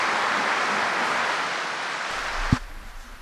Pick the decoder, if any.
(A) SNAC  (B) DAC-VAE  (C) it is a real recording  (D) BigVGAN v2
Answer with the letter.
D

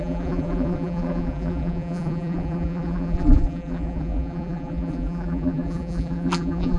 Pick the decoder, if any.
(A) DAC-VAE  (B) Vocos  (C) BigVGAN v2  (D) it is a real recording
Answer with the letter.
C